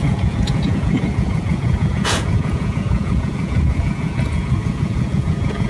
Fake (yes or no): yes